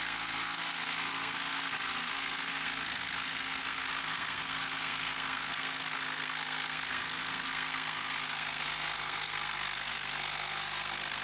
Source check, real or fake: fake